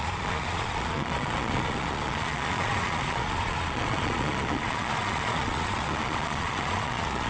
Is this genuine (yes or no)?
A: no